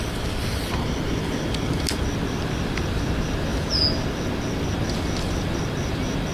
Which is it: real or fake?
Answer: real